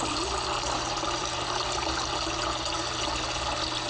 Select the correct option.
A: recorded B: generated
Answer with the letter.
A